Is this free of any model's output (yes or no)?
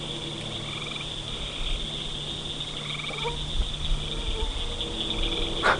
yes